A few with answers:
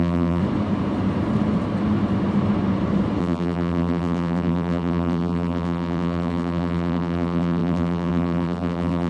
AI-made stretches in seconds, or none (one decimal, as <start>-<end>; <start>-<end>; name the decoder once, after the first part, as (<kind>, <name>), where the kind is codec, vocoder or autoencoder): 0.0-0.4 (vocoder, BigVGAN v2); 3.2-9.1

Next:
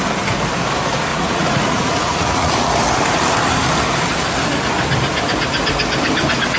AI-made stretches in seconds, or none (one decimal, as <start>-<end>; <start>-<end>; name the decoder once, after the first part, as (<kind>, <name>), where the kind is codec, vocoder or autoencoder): 1.1-2.5 (vocoder, Vocos)

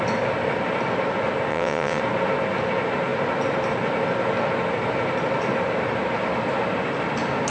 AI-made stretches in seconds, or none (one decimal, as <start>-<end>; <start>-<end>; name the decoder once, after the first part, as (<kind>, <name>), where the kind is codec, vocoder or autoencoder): 1.5-2.0 (vocoder, WaveNeXt)

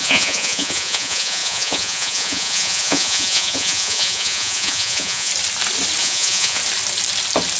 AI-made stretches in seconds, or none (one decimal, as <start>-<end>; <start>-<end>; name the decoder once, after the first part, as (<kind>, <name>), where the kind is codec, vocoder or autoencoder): 0.0-5.3 (vocoder, Vocos); 6.0-6.6

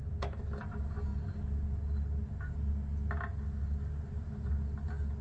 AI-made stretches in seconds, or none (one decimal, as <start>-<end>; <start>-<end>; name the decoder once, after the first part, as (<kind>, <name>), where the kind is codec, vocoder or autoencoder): none

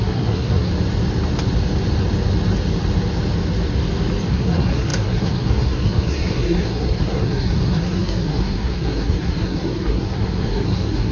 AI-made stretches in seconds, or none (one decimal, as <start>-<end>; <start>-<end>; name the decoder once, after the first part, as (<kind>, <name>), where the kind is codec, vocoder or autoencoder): 0.0-0.7 (codec, SNAC); 4.3-11.1

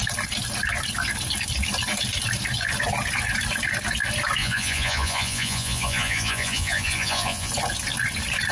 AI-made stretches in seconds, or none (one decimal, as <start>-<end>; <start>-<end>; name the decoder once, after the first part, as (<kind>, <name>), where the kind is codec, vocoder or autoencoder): 4.4-7.5 (vocoder, Vocos)

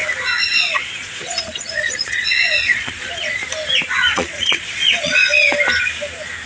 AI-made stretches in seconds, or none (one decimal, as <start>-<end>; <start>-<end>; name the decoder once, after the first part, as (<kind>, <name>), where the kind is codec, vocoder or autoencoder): 0.5-3.4 (vocoder, Vocos); 4.0-5.2